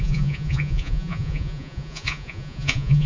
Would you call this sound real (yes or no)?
no